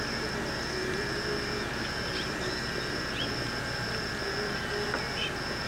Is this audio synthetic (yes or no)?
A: yes